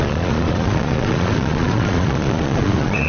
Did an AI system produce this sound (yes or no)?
yes